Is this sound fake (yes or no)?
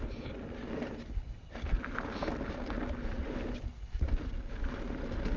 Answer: no